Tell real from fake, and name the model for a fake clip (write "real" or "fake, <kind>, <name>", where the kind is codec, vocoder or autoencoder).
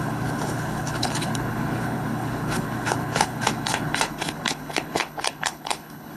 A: fake, codec, HILCodec